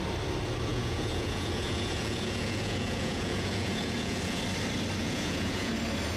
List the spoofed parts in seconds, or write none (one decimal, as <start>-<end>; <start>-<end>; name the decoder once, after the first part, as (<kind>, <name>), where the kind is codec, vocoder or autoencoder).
0.7-4.4 (vocoder, Vocos); 5.0-5.7